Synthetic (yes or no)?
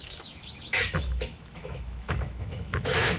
yes